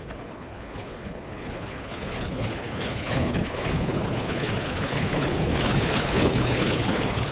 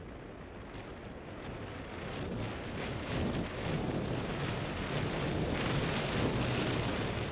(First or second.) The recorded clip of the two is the second